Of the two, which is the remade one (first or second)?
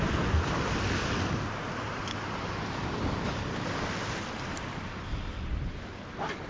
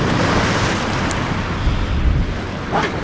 first